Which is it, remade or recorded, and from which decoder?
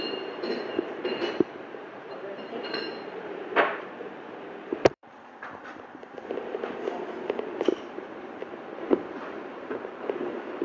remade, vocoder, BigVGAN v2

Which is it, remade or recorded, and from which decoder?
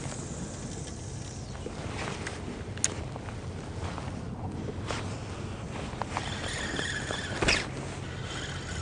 recorded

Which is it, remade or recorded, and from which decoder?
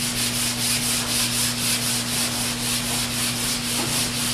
recorded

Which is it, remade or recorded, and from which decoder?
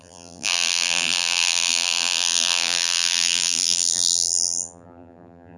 remade, vocoder, BigVGAN v2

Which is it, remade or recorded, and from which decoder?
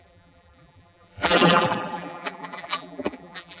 remade, vocoder, BigVGAN v2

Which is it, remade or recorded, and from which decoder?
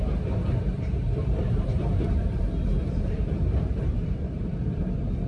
remade, vocoder, BigVGAN v2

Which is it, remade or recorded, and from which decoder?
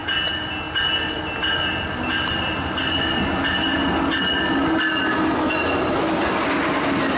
recorded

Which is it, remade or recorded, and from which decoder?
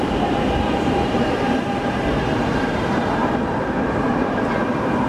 remade, vocoder, BigVGAN v2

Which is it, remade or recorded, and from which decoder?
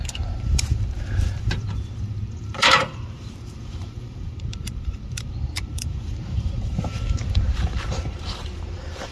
remade, vocoder, BigVGAN v2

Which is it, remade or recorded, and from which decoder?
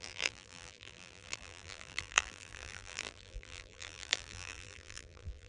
remade, vocoder, BigVGAN v2